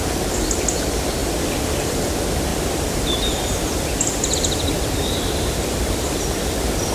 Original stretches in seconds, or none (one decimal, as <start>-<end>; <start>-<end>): 0.0-1.2; 2.1-2.5